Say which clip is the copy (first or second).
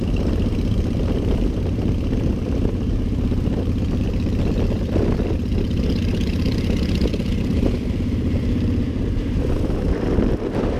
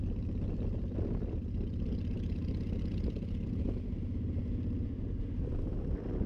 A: first